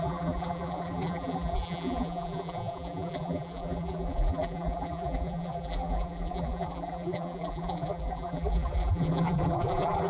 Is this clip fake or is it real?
fake